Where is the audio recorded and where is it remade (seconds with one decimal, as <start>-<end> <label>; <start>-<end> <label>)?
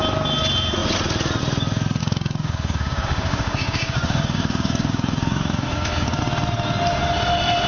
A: 0.0-2.0 recorded; 2.0-6.2 remade; 6.2-7.7 recorded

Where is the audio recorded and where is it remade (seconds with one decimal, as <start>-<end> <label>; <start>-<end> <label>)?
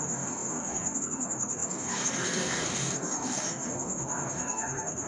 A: 0.0-5.1 remade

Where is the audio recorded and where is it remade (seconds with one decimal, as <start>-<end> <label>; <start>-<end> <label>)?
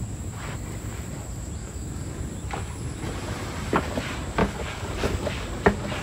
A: 0.0-1.6 recorded; 1.6-2.2 remade; 2.2-4.4 recorded; 4.4-5.3 remade; 5.3-6.0 recorded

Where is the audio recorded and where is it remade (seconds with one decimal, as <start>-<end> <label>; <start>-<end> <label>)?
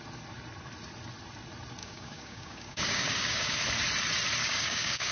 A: 0.0-1.8 recorded; 1.8-3.6 remade; 3.6-4.4 recorded; 4.4-5.1 remade